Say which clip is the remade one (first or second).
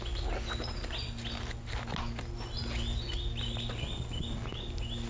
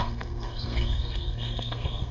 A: second